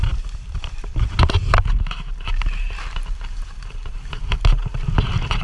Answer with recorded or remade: recorded